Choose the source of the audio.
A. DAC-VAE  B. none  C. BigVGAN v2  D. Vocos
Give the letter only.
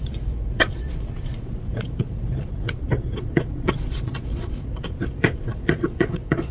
D